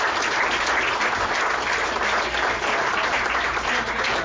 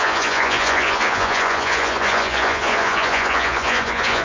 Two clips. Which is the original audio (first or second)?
first